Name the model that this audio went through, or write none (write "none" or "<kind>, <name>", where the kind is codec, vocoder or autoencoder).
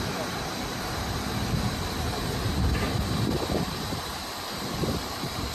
vocoder, BigVGAN v2